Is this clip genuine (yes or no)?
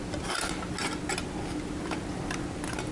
yes